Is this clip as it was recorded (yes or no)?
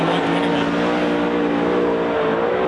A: yes